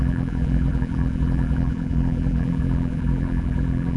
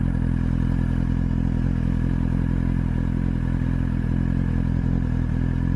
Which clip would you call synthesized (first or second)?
first